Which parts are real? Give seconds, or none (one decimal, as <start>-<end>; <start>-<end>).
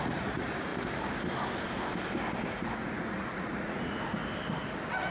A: 0.7-2.5; 4.2-5.1